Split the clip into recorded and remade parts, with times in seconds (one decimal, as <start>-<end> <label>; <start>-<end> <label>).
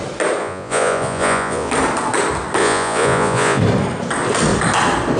0.0-0.4 recorded; 0.4-1.7 remade; 1.7-2.6 recorded; 2.6-3.6 remade; 3.6-5.2 recorded